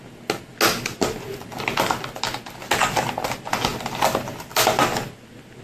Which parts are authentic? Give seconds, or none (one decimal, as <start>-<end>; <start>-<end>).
0.0-5.6